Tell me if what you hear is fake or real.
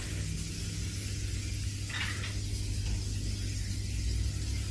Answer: real